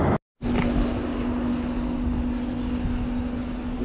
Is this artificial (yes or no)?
no